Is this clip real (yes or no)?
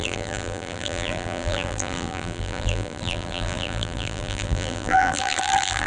no